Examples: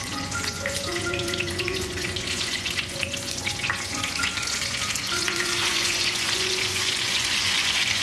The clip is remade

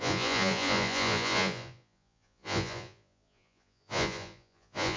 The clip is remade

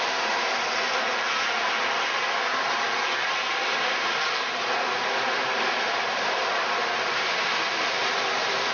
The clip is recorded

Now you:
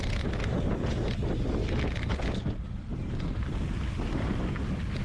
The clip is recorded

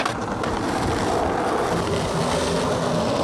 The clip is recorded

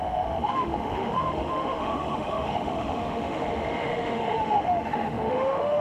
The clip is remade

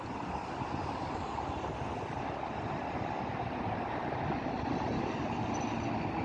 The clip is recorded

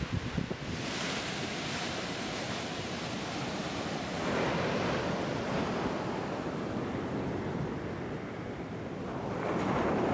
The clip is recorded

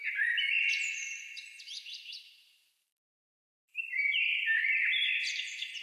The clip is remade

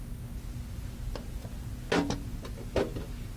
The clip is recorded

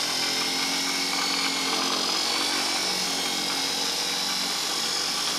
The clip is recorded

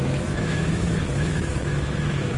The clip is remade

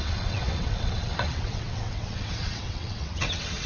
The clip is remade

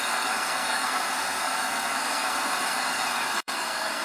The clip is remade